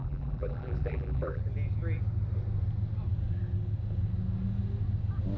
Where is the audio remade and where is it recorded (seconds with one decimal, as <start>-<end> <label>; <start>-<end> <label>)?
0.0-1.4 remade; 1.4-5.4 recorded